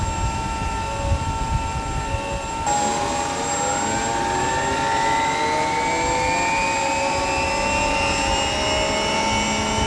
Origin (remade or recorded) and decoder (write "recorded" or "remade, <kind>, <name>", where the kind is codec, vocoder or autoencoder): recorded